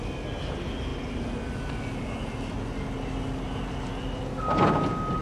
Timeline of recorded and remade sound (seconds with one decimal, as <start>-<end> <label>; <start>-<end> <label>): 0.0-5.2 recorded